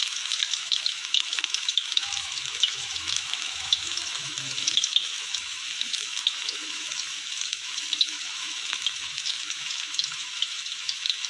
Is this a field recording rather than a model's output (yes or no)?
no